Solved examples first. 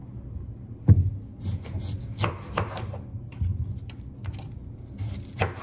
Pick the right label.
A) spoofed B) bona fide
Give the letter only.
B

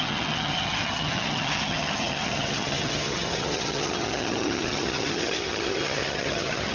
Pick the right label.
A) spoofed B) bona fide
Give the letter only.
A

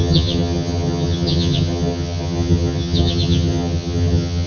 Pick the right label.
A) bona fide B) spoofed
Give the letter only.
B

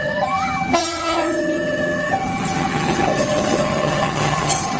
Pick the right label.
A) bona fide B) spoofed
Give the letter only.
B